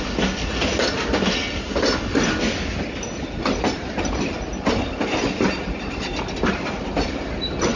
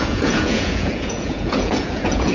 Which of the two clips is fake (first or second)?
second